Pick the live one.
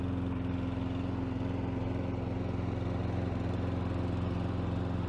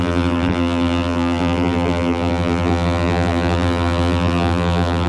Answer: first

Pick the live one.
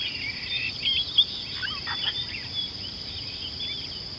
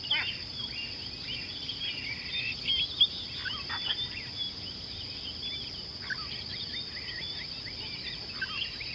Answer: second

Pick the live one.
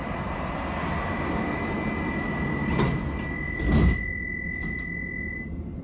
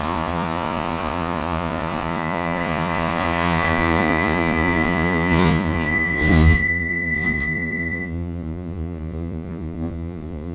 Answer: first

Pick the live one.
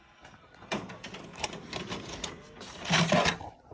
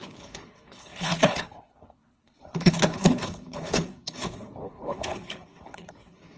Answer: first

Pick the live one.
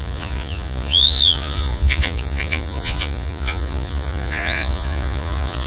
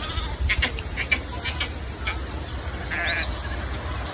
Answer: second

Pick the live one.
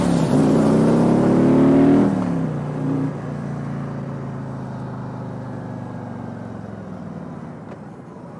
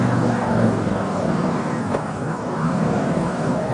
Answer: first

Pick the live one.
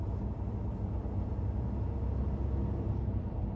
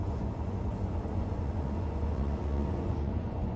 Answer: first